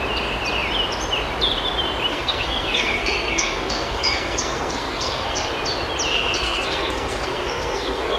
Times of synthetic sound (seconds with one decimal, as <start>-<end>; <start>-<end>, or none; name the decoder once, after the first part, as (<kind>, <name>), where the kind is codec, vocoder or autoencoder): 2.1-5.5 (codec, SNAC); 6.1-8.2